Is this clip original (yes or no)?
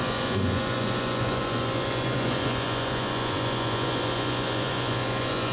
no